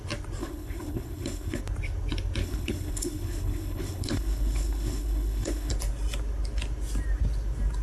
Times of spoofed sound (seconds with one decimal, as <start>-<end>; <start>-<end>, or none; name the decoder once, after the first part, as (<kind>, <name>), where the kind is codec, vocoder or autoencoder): 0.4-1.6 (codec, HILCodec); 2.4-5.7